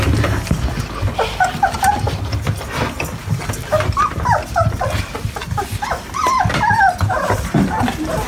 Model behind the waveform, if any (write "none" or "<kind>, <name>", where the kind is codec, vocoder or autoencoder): none